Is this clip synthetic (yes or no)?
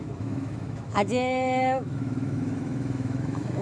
yes